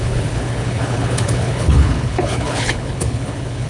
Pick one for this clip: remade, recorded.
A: remade